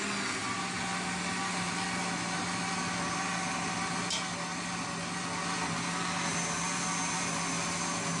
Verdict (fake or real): real